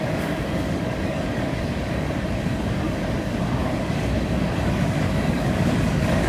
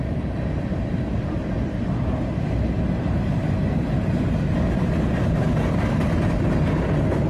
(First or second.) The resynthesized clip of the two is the first